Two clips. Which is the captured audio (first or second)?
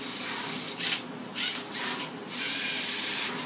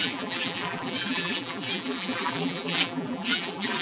first